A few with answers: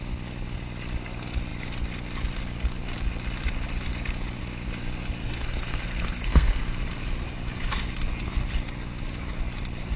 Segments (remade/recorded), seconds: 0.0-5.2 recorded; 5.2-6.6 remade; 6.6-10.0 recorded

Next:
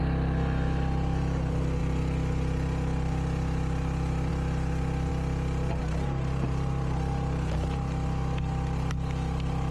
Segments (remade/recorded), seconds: 0.0-9.7 recorded

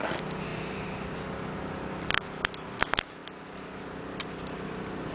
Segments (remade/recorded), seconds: 0.0-5.1 recorded